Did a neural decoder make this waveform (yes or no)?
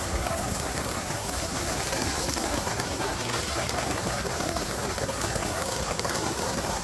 yes